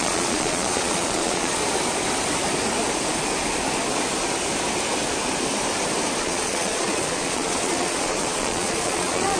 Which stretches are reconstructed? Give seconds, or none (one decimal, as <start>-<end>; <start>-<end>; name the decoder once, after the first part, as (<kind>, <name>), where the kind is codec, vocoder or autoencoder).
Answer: 0.0-1.6 (vocoder, Vocos); 6.2-9.4